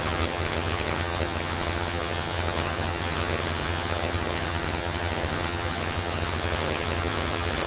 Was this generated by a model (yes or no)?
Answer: yes